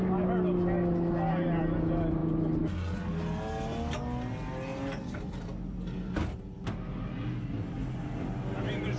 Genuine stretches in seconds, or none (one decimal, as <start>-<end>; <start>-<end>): 0.0-9.0